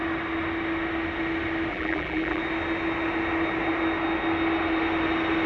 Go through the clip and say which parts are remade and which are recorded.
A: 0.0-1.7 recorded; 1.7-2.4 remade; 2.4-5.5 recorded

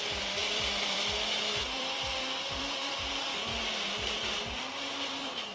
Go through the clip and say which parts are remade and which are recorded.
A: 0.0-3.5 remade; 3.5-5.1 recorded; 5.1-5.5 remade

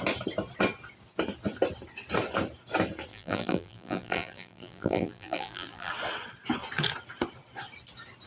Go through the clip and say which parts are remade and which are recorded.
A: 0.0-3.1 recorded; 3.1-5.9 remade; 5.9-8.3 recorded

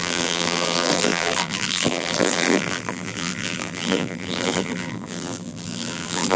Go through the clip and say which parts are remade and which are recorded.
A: 0.0-6.4 remade

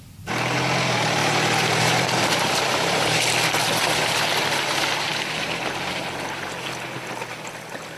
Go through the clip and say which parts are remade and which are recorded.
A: 0.0-1.2 recorded; 1.2-4.1 remade; 4.1-8.0 recorded